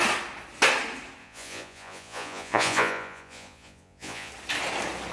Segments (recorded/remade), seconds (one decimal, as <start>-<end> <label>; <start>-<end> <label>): 0.0-1.2 recorded; 1.2-4.3 remade; 4.3-5.1 recorded